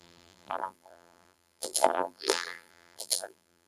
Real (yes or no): no